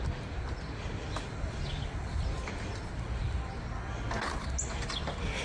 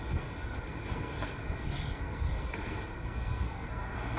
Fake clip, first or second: second